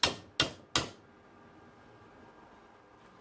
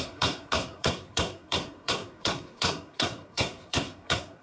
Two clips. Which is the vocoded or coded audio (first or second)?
second